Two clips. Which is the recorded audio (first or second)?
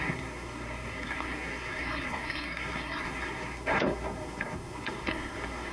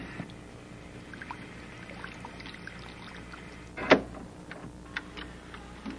second